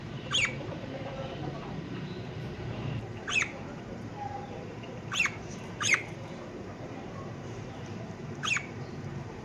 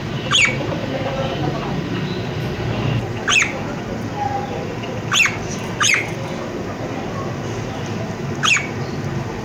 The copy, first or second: first